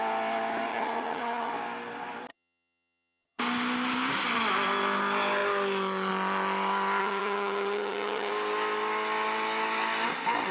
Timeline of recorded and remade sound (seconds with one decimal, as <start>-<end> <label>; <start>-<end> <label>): 0.0-0.7 recorded; 0.7-1.5 remade; 1.5-2.3 recorded; 2.3-3.4 remade; 3.4-7.0 recorded; 7.0-8.3 remade; 8.3-10.5 recorded